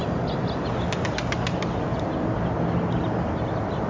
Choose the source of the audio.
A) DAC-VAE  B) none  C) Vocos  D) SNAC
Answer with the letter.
B